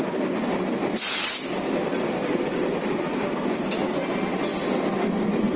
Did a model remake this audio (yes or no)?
no